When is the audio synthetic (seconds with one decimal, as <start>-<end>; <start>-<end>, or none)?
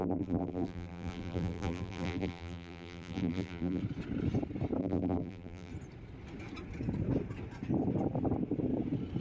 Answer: 0.0-3.8; 4.8-5.7